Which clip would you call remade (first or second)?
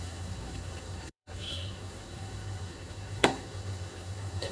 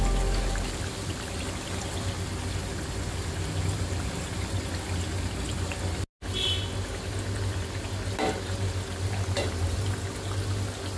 first